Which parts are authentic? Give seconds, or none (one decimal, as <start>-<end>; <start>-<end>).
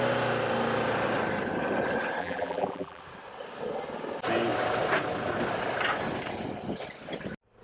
0.0-2.2; 3.0-7.6